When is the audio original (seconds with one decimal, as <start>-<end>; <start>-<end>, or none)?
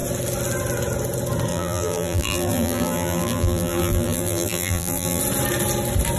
0.0-1.5; 5.2-6.2